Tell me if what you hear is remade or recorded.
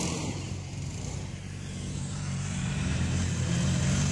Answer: remade